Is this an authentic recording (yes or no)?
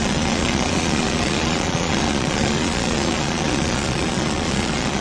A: no